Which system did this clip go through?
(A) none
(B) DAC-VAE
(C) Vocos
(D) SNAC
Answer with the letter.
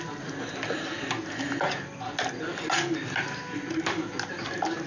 A